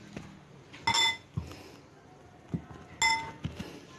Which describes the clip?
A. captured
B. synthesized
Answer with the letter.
A